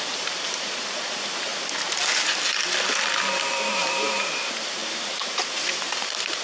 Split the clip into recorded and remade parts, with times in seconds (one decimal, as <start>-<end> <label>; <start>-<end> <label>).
0.0-1.5 remade; 1.5-3.5 recorded; 3.5-6.4 remade

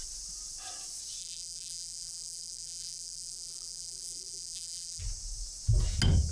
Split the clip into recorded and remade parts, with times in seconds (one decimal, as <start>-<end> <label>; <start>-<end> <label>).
0.0-1.2 recorded; 1.2-5.0 remade; 5.0-6.3 recorded

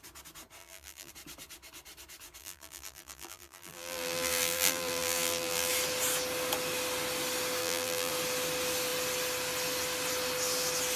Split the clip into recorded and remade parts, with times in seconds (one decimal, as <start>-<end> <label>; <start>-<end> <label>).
0.0-0.6 recorded; 0.6-1.1 remade; 1.1-2.4 recorded; 2.4-5.7 remade; 5.7-7.6 recorded; 7.6-8.1 remade; 8.1-11.0 recorded

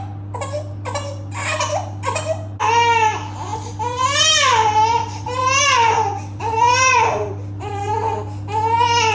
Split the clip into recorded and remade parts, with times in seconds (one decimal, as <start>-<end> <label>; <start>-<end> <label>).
0.0-3.5 recorded; 3.5-7.9 remade; 7.9-9.1 recorded

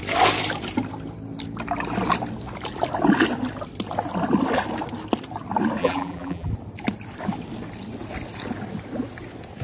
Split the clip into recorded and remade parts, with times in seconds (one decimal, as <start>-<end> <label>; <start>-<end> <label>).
0.0-5.8 recorded; 5.8-6.5 remade; 6.5-9.6 recorded

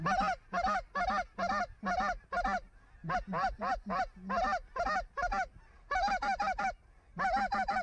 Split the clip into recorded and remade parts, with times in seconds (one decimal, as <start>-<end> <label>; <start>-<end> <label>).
0.0-7.8 recorded

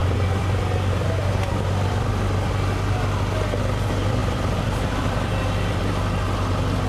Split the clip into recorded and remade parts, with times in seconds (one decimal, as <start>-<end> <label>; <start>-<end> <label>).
0.0-2.1 remade; 2.1-4.2 recorded; 4.2-5.8 remade; 5.8-6.9 recorded